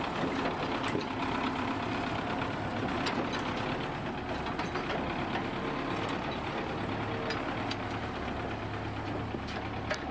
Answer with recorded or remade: recorded